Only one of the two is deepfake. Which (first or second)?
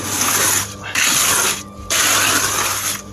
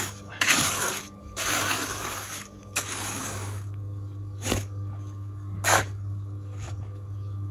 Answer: second